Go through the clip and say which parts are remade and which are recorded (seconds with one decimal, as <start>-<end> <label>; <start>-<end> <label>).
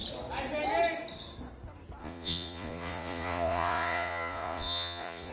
0.0-2.0 recorded; 2.0-5.3 remade